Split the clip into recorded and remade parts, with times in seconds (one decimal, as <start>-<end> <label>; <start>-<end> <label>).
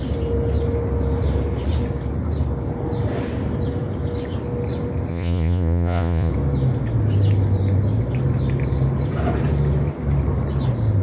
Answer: 0.0-5.1 recorded; 5.1-6.3 remade; 6.3-11.0 recorded